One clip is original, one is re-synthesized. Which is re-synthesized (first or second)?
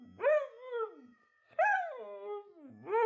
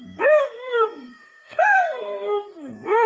second